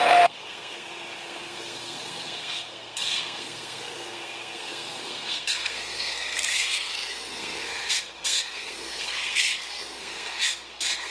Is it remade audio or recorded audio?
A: remade